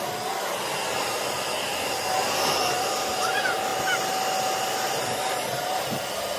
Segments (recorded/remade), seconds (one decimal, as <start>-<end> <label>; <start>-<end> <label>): 0.0-6.4 recorded